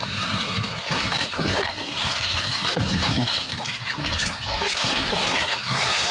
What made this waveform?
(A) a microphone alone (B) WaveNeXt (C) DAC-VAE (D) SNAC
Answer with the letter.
D